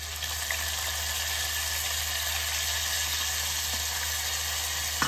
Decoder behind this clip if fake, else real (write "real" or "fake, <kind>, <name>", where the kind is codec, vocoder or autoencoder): real